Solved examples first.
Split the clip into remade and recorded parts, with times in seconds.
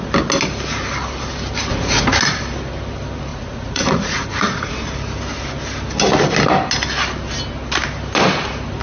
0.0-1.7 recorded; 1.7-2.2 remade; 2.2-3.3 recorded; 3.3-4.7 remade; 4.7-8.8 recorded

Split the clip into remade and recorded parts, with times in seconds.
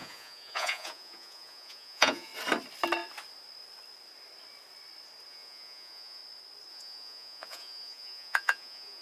0.0-2.3 remade; 2.3-5.3 recorded; 5.3-6.2 remade; 6.2-6.7 recorded; 6.7-9.0 remade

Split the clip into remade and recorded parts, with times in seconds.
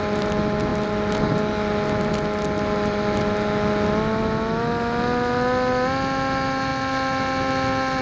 0.0-8.0 recorded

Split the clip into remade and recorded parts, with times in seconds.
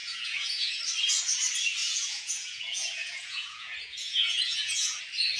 0.0-0.8 remade; 0.8-1.8 recorded; 1.8-5.0 remade; 5.0-5.4 recorded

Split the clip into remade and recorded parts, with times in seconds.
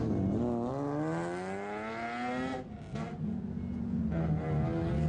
0.0-3.1 recorded; 3.1-4.0 remade; 4.0-5.1 recorded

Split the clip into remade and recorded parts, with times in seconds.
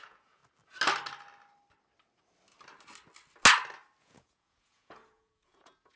0.0-0.4 remade; 0.4-4.0 recorded; 4.0-6.0 remade